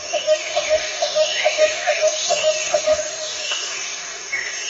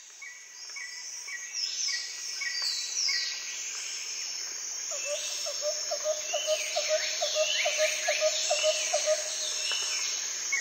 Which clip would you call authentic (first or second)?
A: second